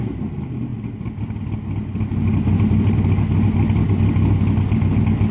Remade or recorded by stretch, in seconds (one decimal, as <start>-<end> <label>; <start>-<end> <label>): 0.0-5.3 recorded